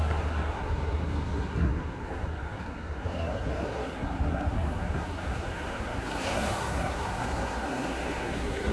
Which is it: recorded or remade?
remade